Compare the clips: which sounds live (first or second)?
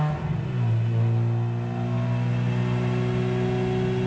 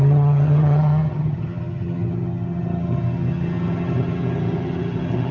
first